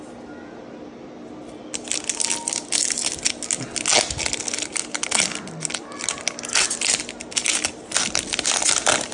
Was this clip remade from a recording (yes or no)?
no